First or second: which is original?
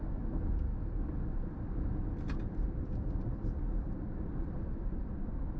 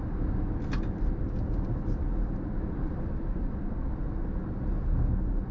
second